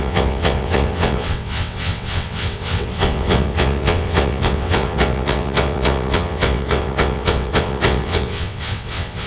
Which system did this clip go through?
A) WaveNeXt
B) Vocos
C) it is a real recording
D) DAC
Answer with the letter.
A